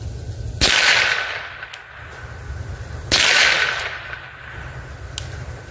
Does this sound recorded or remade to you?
recorded